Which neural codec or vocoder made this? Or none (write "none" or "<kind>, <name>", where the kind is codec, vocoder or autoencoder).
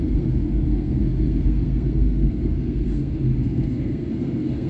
codec, SNAC